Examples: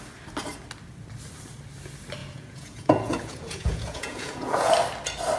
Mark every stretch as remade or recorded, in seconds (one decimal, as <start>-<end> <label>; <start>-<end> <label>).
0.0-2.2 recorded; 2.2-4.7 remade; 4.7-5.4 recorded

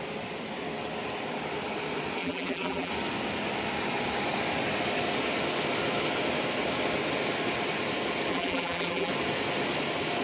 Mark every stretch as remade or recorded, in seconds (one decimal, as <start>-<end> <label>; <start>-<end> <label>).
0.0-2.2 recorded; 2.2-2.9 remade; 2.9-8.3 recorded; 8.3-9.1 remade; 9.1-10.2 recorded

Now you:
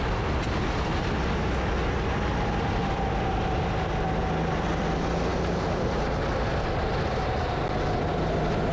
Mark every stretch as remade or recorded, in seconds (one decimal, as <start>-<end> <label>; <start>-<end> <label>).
0.0-5.3 recorded; 5.3-6.1 remade; 6.1-8.7 recorded

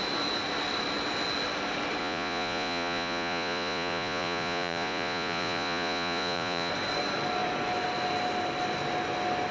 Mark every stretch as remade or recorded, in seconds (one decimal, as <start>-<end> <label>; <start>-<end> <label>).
0.0-2.0 recorded; 2.0-6.7 remade; 6.7-9.5 recorded

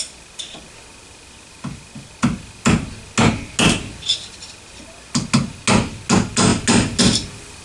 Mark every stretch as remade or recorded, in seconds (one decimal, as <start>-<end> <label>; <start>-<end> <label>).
0.0-7.6 recorded

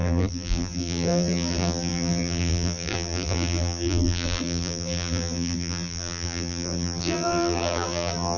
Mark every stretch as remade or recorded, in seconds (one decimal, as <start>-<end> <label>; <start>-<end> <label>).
0.0-8.4 remade

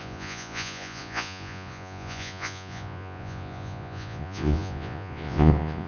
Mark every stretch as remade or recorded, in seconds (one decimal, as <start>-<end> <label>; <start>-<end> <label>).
0.0-5.9 remade